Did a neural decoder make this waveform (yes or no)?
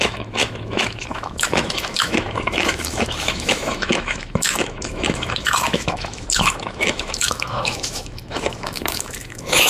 yes